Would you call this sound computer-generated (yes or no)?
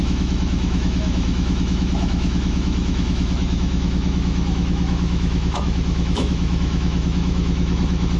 yes